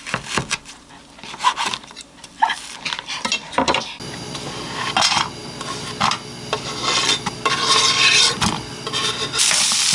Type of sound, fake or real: fake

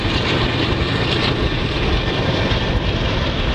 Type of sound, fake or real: real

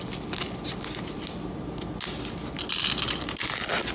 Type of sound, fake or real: real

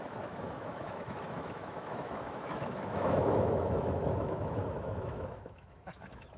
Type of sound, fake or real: fake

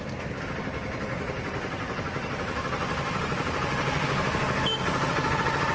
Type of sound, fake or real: real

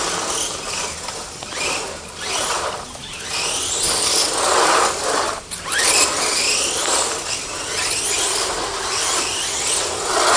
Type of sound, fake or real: real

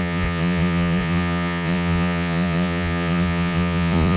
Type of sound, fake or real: fake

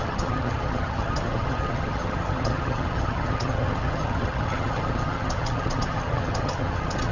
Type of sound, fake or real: fake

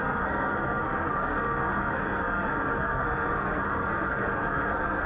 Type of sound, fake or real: fake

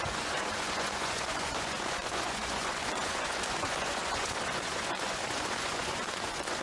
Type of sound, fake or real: fake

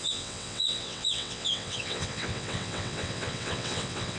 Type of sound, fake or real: fake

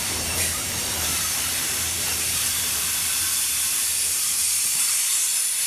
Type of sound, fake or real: fake